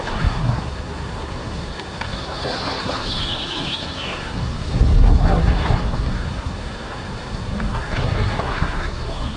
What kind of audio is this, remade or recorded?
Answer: remade